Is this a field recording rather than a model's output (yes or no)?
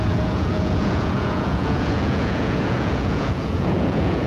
no